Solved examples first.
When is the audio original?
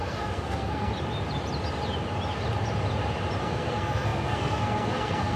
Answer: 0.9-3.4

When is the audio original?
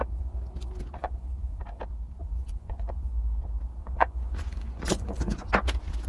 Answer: 0.0-1.0; 1.6-2.2; 3.1-3.8; 5.5-6.1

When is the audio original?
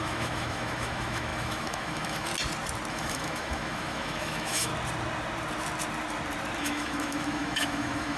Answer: 2.3-2.9; 4.7-6.6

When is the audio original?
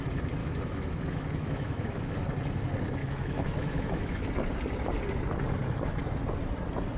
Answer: 0.0-0.4; 2.0-3.0; 4.3-7.0